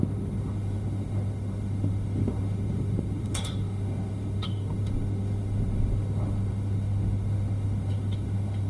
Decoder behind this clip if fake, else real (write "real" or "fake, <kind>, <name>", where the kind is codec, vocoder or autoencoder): fake, autoencoder, DAC-VAE